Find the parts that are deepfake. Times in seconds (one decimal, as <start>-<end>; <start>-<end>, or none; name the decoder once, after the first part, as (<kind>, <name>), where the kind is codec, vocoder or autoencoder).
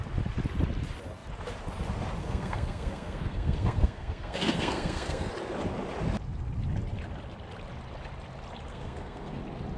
2.2-5.3 (codec, SNAC); 8.7-9.4